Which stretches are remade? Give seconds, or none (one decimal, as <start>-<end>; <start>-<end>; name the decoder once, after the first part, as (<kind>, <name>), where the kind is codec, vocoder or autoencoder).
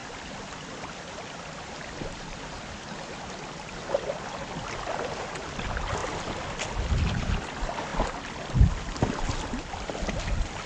0.0-2.4 (vocoder, BigVGAN v2)